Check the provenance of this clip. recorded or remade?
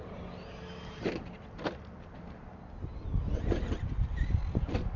recorded